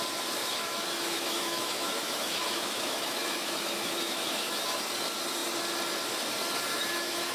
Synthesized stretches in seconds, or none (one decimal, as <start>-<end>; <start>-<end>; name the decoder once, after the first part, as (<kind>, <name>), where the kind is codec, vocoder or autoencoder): 0.4-4.8 (autoencoder, DAC-VAE); 6.7-7.3